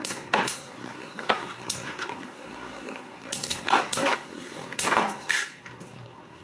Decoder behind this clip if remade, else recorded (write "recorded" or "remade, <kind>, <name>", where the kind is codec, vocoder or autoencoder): remade, codec, SNAC